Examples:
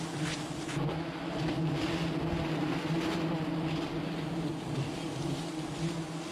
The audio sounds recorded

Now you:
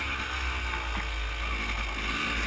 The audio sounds recorded